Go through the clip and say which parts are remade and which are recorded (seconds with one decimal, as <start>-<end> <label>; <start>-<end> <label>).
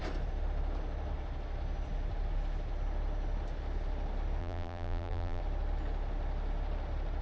0.0-4.4 recorded; 4.4-5.4 remade; 5.4-7.2 recorded